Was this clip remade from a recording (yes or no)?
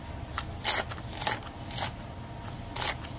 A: no